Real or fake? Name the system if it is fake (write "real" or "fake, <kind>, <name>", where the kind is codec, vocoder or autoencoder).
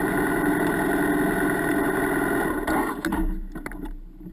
real